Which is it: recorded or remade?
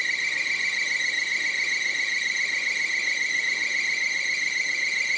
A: recorded